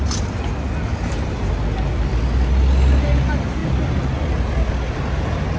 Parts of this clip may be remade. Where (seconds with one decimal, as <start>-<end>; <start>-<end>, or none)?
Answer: 0.9-1.5